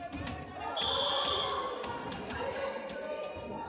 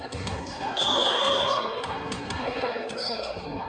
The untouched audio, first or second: first